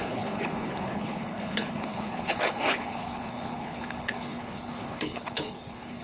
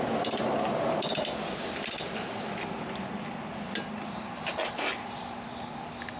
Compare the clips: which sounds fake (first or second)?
first